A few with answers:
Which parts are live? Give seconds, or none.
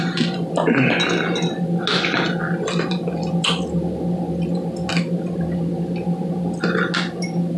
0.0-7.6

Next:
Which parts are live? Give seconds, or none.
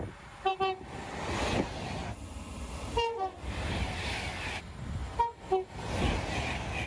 0.0-6.9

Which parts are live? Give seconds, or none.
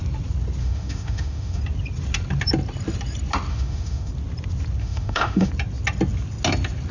0.0-0.6; 1.6-3.5; 4.1-4.8; 5.5-6.9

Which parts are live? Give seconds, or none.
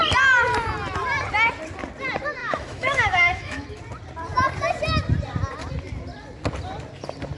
0.0-2.4; 3.8-7.4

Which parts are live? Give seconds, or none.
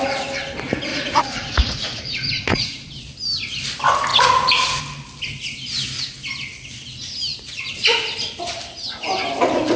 0.0-0.9; 2.9-4.1; 4.8-9.8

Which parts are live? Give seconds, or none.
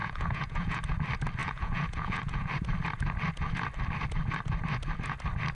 0.8-1.4; 2.5-5.5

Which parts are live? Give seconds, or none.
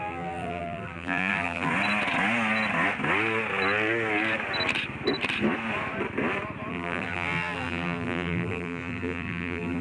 1.7-6.7